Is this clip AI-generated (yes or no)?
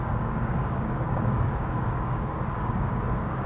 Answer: yes